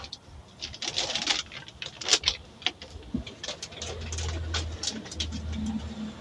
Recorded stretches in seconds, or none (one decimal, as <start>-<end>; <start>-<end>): 0.0-6.2